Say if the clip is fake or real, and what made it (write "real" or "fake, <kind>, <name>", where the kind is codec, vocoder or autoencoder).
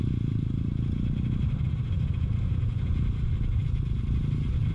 real